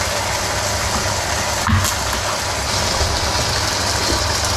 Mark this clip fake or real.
real